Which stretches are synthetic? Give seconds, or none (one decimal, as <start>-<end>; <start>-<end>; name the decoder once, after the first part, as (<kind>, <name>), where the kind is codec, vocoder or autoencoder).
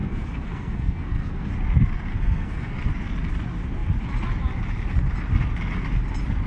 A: 0.0-1.5 (codec, SNAC); 2.1-2.9